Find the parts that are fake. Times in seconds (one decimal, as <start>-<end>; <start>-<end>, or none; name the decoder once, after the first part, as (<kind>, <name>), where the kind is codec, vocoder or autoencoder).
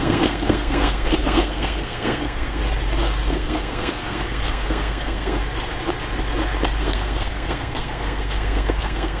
0.0-2.6 (codec, SNAC); 3.3-5.4; 6.8-9.2